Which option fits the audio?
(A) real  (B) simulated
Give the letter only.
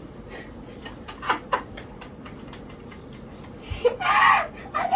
A